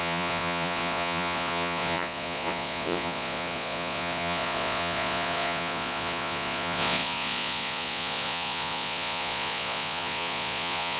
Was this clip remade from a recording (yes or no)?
yes